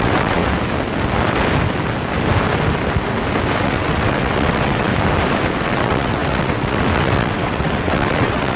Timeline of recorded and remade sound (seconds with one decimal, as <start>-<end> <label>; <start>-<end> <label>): 0.0-0.4 remade; 0.4-3.6 recorded; 3.6-4.9 remade; 4.9-5.6 recorded; 5.6-8.6 remade